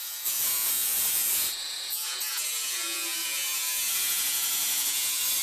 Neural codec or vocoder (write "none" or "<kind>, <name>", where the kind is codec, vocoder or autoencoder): vocoder, Vocos